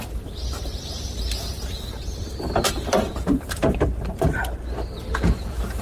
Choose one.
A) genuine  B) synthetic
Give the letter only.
B